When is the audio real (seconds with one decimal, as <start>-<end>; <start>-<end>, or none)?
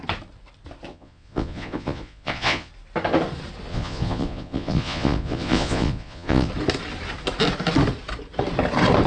0.0-0.9; 2.7-3.7; 6.5-9.1